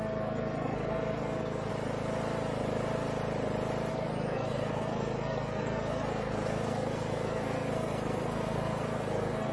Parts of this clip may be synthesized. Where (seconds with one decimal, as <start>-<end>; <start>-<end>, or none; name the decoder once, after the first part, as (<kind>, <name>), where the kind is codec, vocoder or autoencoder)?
0.0-1.7 (codec, SNAC); 3.9-9.5